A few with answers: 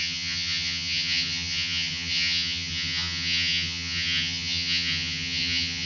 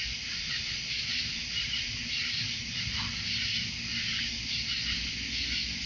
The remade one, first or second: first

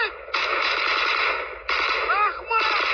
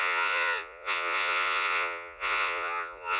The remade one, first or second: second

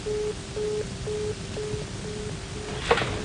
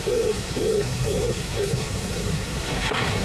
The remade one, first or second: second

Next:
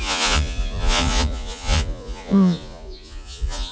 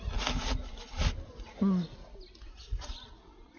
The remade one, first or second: first